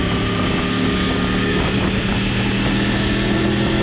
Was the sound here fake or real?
real